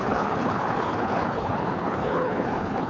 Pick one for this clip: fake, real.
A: fake